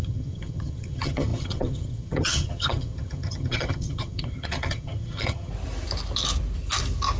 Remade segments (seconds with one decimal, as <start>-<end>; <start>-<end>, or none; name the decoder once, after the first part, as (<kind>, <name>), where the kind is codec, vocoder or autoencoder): 0.0-5.5 (vocoder, HiFi-GAN)